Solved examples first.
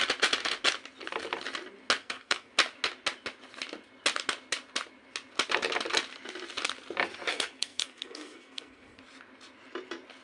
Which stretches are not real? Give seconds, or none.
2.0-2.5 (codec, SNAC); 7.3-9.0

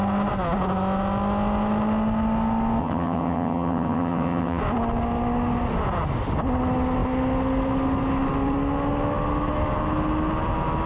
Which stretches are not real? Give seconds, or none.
2.8-4.6 (vocoder, HiFi-GAN)

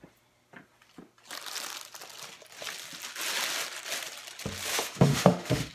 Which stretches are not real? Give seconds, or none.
4.7-5.7 (autoencoder, DAC-VAE)